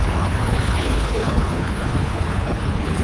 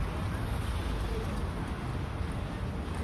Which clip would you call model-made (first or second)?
first